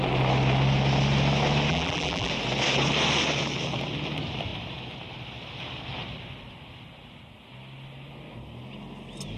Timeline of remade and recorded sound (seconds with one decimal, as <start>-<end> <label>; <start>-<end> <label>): 0.0-1.7 recorded; 1.7-2.3 remade; 2.3-9.4 recorded

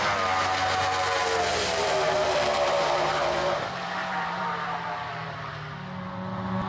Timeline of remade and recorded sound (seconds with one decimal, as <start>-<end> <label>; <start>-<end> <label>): 0.0-1.5 recorded; 1.5-5.5 remade; 5.5-6.7 recorded

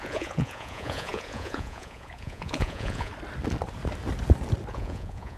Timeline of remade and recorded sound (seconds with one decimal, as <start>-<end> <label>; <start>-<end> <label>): 0.0-3.1 remade; 3.1-4.7 recorded; 4.7-5.4 remade

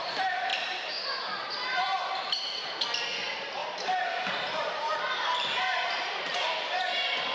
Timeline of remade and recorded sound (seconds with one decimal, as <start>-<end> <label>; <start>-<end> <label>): 0.0-0.5 recorded; 0.5-2.1 remade; 2.1-3.6 recorded; 3.6-6.8 remade; 6.8-7.3 recorded

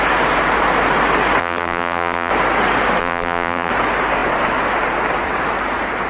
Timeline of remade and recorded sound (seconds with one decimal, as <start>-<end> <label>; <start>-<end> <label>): 0.0-1.4 recorded; 1.4-2.3 remade; 2.3-3.0 recorded; 3.0-3.7 remade; 3.7-6.1 recorded

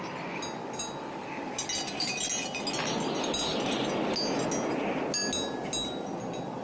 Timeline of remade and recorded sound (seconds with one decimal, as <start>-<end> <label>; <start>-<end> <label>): 0.0-6.6 recorded

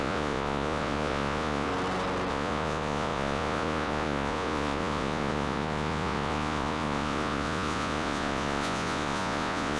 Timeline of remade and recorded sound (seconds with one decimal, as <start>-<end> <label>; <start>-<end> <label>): 0.0-1.7 remade; 1.7-2.3 recorded; 2.3-9.8 remade